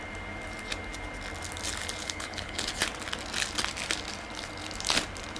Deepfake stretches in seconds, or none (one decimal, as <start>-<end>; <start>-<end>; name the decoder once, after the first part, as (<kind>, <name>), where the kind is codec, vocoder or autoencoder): 2.0-2.7 (codec, HILCodec)